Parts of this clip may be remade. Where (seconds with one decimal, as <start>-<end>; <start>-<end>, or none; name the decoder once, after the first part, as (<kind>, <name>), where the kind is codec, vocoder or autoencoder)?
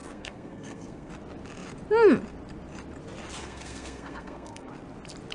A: 0.0-1.1 (codec, SNAC); 3.4-4.7